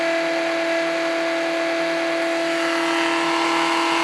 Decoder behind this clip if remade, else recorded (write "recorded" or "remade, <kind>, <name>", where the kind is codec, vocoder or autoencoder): recorded